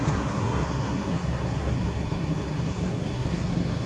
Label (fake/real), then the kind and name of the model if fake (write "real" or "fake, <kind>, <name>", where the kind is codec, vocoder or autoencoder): fake, codec, SNAC